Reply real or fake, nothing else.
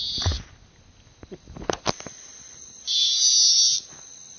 real